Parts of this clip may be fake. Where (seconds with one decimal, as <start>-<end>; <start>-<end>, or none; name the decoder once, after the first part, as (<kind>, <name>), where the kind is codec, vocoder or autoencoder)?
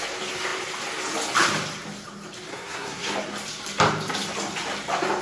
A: 2.5-3.1 (codec, SNAC)